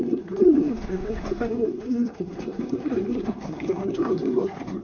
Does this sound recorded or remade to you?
remade